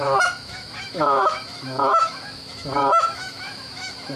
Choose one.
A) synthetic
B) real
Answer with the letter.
A